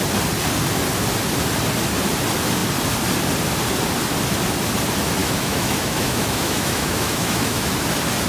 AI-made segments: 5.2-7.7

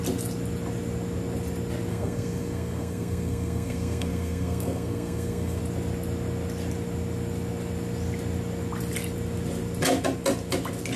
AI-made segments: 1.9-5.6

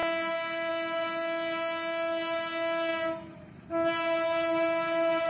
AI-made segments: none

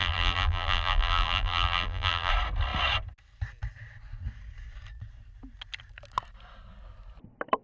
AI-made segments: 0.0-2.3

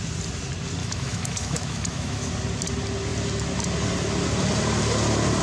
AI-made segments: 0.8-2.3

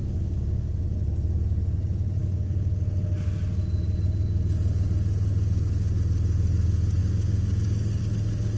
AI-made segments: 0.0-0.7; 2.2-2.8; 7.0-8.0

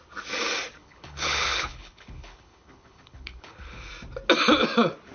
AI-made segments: 0.8-3.9